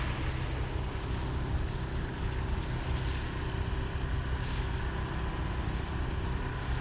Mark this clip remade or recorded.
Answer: recorded